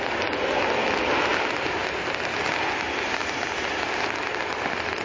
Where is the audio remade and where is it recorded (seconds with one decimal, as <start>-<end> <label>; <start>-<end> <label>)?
0.0-5.0 recorded